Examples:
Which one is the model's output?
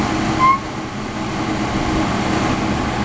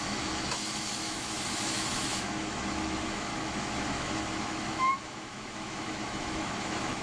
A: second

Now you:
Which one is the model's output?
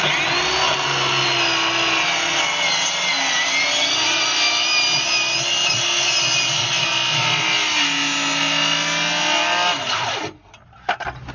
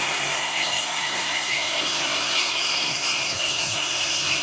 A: second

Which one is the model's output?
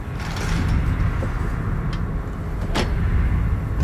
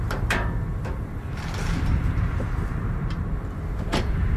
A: second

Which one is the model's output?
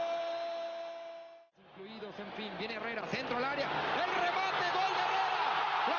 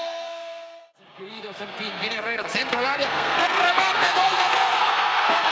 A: second